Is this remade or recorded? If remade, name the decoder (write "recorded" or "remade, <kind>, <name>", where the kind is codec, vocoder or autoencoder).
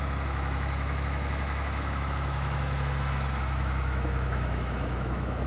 remade, autoencoder, DAC-VAE